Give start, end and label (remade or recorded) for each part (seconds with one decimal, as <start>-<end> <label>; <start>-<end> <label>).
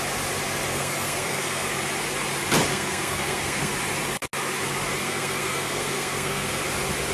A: 0.0-0.7 recorded; 0.7-1.7 remade; 1.7-2.7 recorded; 2.7-3.7 remade; 3.7-5.0 recorded; 5.0-6.6 remade; 6.6-7.1 recorded